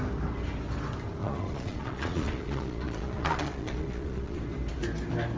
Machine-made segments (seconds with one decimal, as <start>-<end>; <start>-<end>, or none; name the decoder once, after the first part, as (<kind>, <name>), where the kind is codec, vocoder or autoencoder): 1.2-4.4 (vocoder, Vocos)